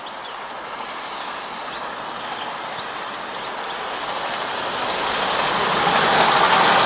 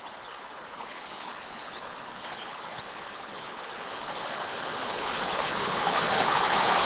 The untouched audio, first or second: first